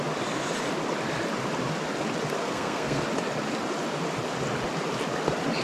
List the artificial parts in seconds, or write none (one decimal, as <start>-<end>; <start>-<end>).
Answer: 2.4-3.0